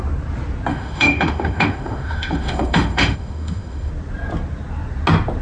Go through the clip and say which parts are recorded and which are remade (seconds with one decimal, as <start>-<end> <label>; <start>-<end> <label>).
0.0-0.7 recorded; 0.7-3.9 remade; 3.9-5.4 recorded